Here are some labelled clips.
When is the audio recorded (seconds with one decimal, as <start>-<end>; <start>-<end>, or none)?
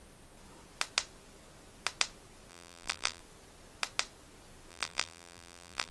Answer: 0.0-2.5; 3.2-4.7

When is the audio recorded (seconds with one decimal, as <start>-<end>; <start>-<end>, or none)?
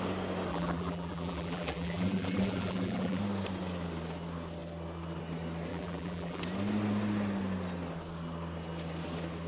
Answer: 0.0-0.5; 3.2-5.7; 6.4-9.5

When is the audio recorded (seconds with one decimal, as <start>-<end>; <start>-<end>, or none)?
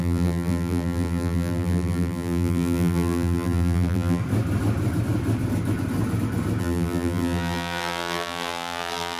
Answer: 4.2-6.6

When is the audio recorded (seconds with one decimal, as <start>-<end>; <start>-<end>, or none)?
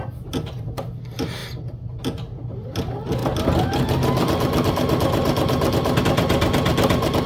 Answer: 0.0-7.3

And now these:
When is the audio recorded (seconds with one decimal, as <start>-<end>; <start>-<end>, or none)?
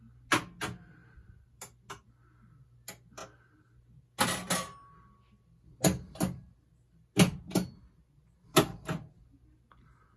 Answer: 0.0-10.2